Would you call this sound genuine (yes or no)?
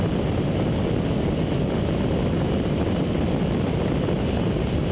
yes